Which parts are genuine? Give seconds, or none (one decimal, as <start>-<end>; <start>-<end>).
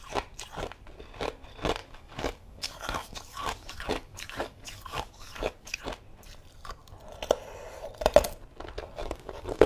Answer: 0.0-1.8; 5.8-9.0